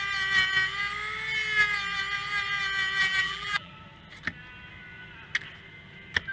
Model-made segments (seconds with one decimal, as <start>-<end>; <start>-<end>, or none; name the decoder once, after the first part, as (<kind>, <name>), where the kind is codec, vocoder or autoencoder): 3.0-3.7 (vocoder, BigVGAN v2)